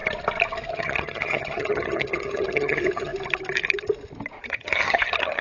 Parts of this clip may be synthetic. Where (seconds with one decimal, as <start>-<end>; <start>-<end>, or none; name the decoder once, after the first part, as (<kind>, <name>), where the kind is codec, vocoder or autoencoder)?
0.7-3.1 (vocoder, HiFi-GAN); 4.4-5.4